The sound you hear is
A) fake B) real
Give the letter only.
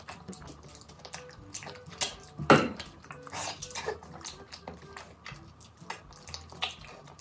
B